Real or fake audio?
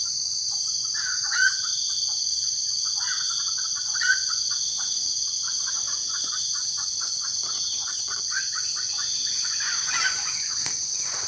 fake